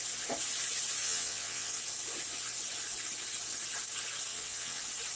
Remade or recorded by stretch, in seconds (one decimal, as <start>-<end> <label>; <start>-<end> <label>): 0.0-1.0 recorded; 1.0-1.8 remade; 1.8-4.3 recorded; 4.3-4.8 remade; 4.8-5.2 recorded